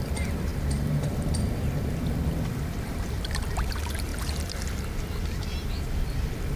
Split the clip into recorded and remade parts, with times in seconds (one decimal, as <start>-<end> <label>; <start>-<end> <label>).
0.0-6.6 remade